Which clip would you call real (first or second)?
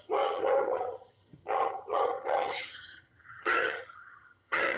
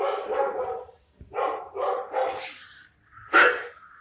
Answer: second